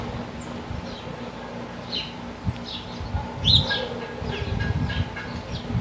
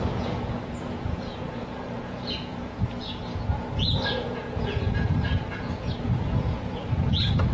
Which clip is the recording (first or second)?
first